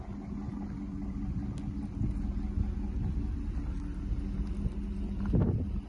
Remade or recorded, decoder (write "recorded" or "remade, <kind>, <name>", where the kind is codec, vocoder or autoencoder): recorded